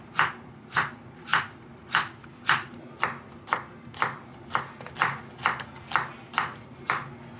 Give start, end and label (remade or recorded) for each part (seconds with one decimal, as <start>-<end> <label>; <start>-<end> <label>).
0.0-7.4 recorded